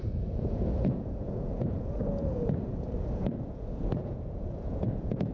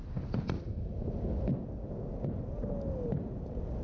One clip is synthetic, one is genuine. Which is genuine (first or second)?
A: second